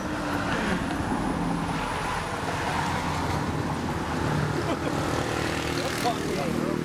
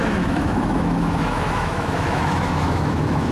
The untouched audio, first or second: first